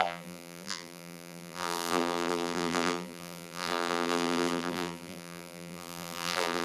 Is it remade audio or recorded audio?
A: remade